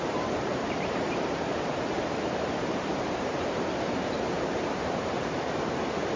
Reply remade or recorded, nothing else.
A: remade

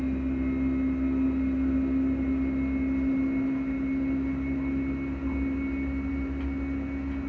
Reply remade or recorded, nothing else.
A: recorded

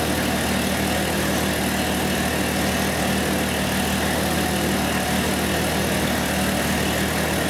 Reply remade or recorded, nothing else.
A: recorded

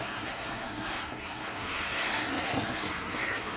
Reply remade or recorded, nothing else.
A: remade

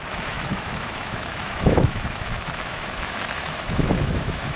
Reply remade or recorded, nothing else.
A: remade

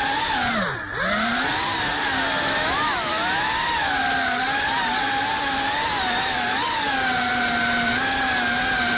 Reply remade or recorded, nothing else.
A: recorded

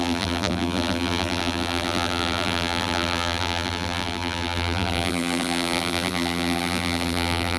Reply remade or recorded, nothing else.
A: remade